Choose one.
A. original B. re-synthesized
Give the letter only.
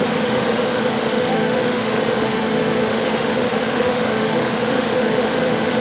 B